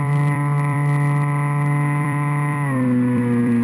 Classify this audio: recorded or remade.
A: remade